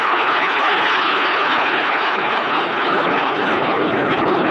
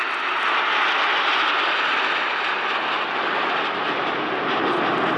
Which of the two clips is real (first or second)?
second